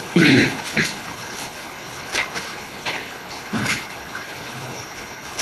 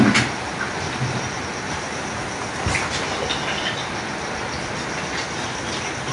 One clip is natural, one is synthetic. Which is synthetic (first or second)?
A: first